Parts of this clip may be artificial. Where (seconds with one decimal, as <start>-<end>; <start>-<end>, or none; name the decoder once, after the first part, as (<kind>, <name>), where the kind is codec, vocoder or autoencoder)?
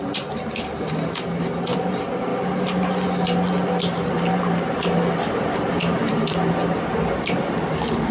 0.0-2.3 (vocoder, BigVGAN v2); 4.1-8.1